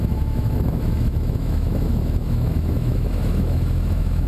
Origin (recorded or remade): remade